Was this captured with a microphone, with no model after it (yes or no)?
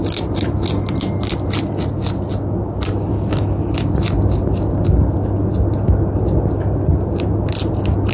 yes